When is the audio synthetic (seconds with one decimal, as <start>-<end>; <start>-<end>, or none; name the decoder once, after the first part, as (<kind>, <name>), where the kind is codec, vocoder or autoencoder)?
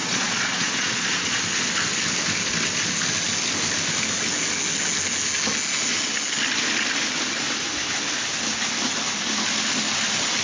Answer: 0.0-1.4 (vocoder, Vocos)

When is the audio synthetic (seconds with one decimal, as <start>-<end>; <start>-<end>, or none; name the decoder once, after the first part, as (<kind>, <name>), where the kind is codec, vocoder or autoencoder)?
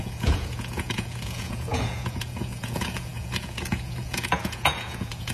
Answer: 0.0-5.3 (vocoder, Vocos)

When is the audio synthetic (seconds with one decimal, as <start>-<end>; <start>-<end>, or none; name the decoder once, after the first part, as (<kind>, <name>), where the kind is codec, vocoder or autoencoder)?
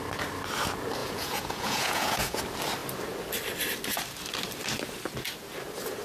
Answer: 1.0-2.4 (vocoder, Vocos)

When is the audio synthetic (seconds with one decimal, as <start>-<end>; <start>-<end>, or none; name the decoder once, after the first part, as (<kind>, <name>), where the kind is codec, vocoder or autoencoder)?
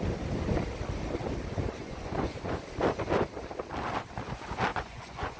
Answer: 1.8-2.6 (vocoder, Vocos); 4.7-5.4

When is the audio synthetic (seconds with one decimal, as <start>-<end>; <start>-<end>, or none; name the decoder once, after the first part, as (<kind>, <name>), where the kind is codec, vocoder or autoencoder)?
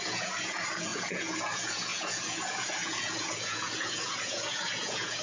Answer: 0.0-5.2 (vocoder, Vocos)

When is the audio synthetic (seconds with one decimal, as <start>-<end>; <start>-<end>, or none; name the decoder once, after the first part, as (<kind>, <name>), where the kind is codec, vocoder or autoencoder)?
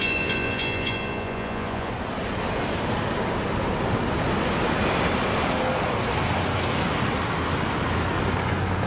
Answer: 0.0-1.9 (vocoder, Vocos)